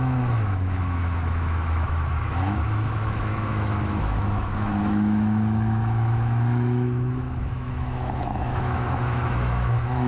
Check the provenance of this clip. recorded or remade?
remade